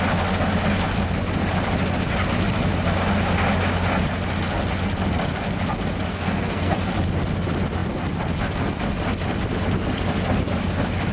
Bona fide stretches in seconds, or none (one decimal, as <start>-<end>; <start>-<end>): 0.0-6.1; 6.9-11.1